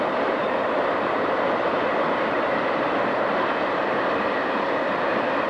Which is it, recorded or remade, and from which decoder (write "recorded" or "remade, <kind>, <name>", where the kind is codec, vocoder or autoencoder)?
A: remade, vocoder, BigVGAN v2